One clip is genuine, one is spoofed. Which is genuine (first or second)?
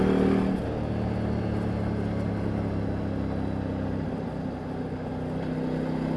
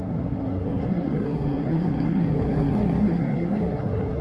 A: first